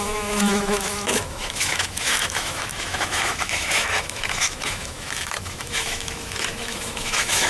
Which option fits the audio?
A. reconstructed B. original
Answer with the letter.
A